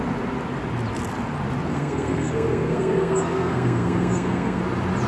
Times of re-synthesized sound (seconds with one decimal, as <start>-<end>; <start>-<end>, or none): 1.7-4.6